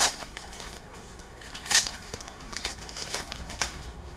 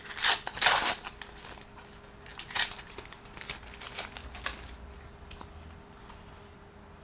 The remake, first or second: first